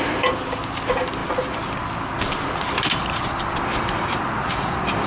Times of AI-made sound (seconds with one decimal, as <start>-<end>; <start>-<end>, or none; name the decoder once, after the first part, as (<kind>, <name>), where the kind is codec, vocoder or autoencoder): none